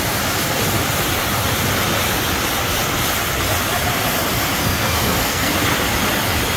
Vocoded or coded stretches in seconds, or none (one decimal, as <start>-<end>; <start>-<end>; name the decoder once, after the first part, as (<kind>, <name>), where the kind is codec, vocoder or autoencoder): 4.6-5.5 (codec, SNAC)

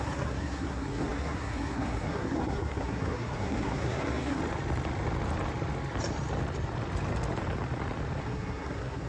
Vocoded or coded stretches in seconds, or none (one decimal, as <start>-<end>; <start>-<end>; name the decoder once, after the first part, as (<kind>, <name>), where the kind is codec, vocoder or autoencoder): 0.0-4.4 (codec, SNAC); 8.2-9.1

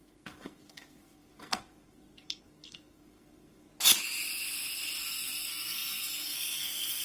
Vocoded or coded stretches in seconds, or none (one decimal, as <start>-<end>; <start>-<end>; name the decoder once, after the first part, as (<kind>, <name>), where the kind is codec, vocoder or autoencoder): 0.0-3.7 (codec, SNAC); 5.0-7.0